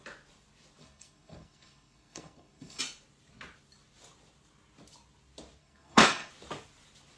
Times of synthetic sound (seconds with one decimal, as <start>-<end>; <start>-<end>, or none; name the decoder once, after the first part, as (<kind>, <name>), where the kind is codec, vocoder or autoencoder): 0.8-2.8 (codec, SNAC); 5.6-6.3